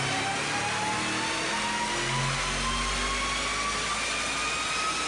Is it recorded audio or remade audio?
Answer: recorded